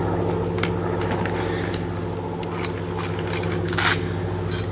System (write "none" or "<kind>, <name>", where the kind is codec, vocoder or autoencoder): none